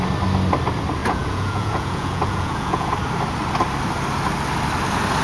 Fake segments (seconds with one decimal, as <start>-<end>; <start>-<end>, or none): 1.0-2.9